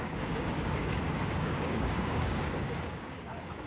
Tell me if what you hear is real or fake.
fake